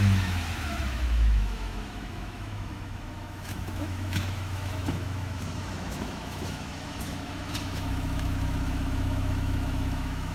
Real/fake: fake